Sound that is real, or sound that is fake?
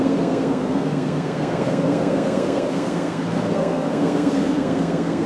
fake